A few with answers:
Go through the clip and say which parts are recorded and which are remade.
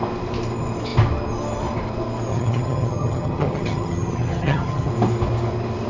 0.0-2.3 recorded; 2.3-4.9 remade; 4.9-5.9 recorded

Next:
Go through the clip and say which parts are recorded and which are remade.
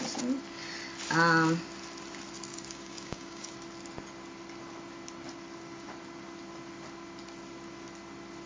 0.0-2.5 recorded; 2.5-3.5 remade; 3.5-8.5 recorded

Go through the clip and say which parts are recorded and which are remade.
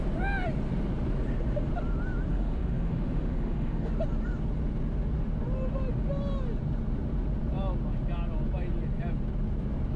0.0-2.3 recorded; 2.3-3.9 remade; 3.9-10.0 recorded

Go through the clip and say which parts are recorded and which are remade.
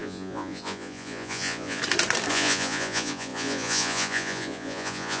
0.0-1.8 remade; 1.8-2.3 recorded; 2.3-5.2 remade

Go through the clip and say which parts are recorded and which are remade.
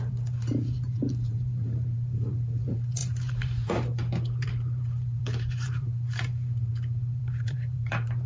0.0-8.3 remade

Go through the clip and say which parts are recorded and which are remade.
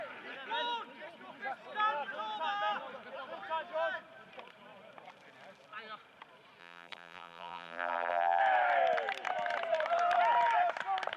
0.0-6.6 recorded; 6.6-8.4 remade; 8.4-11.2 recorded